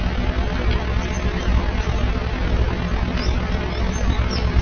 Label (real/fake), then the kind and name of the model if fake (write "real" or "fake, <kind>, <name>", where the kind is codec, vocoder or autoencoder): real